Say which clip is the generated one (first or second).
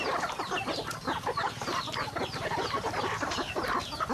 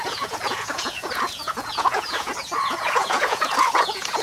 second